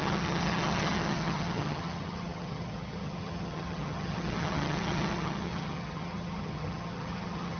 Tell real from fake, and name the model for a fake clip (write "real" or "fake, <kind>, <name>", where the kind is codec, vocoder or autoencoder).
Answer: fake, vocoder, HiFi-GAN